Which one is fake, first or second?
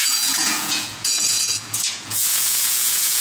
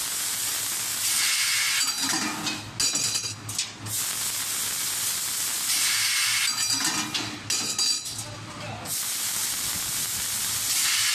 first